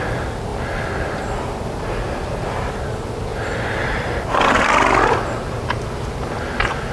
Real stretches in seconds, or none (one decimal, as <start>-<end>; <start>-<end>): 0.0-0.5; 2.4-3.3; 4.2-6.9